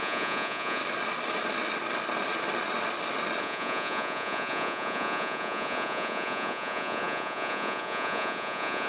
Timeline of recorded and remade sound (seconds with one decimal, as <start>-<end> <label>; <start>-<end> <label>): 0.0-0.8 remade; 0.8-3.4 recorded; 3.4-8.9 remade